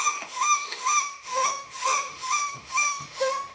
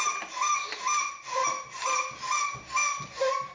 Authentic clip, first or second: second